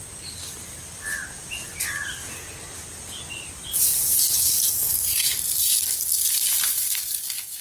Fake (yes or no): no